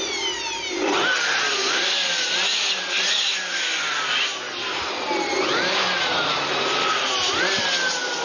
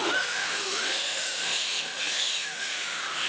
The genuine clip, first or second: first